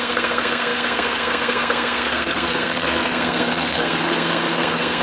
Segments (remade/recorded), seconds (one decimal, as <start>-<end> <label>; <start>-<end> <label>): 0.0-5.0 remade

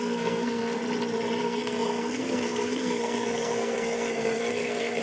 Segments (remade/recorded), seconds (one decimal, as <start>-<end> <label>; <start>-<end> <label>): 0.0-0.8 remade; 0.8-1.4 recorded; 1.4-5.0 remade

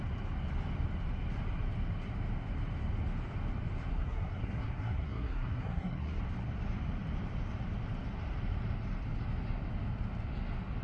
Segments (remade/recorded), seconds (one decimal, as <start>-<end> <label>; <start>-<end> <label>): 0.0-3.9 recorded; 3.9-6.2 remade; 6.2-10.8 recorded

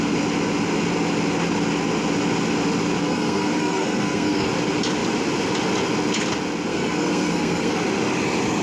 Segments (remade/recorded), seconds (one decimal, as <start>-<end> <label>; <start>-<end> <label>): 0.0-3.0 recorded; 3.0-4.5 remade; 4.5-6.7 recorded; 6.7-7.8 remade; 7.8-8.6 recorded

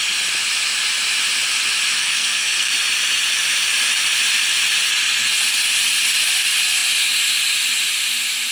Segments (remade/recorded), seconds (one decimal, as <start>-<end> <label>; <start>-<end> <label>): 0.0-2.0 recorded; 2.0-2.7 remade; 2.7-8.5 recorded

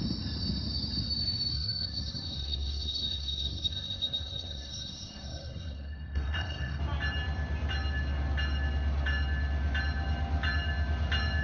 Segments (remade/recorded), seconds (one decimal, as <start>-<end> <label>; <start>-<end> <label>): 0.0-1.5 recorded; 1.5-6.8 remade; 6.8-11.4 recorded

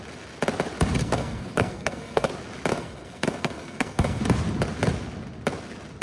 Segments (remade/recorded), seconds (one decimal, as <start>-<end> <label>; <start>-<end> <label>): 0.0-1.0 recorded; 1.0-2.3 remade; 2.3-2.7 recorded; 2.7-4.2 remade; 4.2-6.0 recorded